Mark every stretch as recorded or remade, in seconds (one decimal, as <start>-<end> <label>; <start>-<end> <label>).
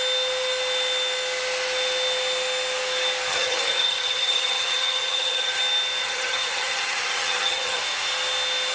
0.0-3.3 recorded; 3.3-5.6 remade; 5.6-6.0 recorded; 6.0-7.8 remade; 7.8-8.7 recorded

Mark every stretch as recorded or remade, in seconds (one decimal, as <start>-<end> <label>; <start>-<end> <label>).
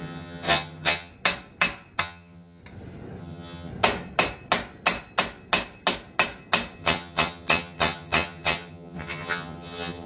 0.0-1.1 remade; 1.1-2.0 recorded; 2.0-2.6 remade; 2.6-3.2 recorded; 3.2-3.7 remade; 3.7-6.8 recorded; 6.8-10.1 remade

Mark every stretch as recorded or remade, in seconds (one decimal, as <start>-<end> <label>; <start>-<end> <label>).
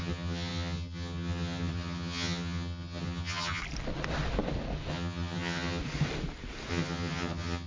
0.0-3.6 remade; 3.6-4.9 recorded; 4.9-5.8 remade; 5.8-6.7 recorded; 6.7-7.7 remade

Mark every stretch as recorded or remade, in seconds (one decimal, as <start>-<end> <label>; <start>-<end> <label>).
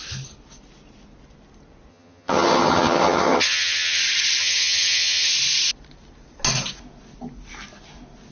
0.0-1.9 recorded; 1.9-4.0 remade; 4.0-4.4 recorded; 4.4-5.3 remade; 5.3-8.3 recorded